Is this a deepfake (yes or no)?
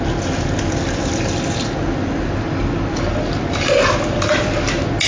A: no